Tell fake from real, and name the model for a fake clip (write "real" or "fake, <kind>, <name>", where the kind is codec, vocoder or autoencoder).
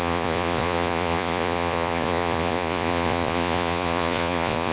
fake, vocoder, Vocos